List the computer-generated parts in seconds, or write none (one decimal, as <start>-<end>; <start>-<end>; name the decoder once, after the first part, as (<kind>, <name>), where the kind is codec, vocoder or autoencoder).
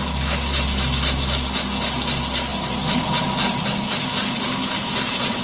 4.6-5.4 (vocoder, BigVGAN v2)